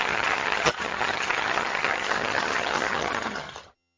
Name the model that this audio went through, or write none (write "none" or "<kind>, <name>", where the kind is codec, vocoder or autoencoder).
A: vocoder, HiFi-GAN